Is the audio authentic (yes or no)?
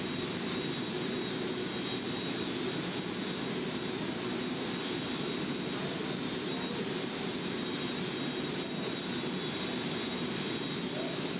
yes